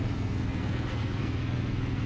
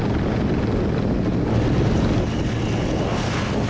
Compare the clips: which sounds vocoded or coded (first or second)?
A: first